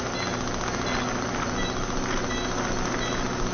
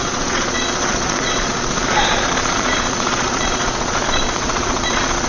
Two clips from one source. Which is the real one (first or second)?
first